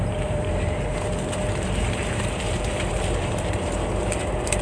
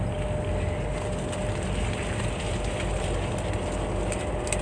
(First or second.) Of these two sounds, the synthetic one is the first